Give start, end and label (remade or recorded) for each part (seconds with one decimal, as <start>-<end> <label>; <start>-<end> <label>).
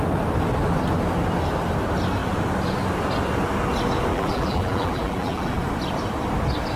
0.0-4.1 recorded; 4.1-5.6 remade; 5.6-6.8 recorded